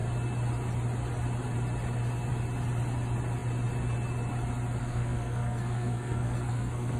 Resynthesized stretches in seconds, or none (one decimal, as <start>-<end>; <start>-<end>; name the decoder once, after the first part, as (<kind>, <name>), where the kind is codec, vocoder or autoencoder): 4.8-7.0 (codec, SNAC)